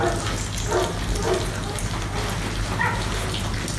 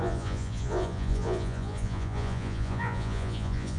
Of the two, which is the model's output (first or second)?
second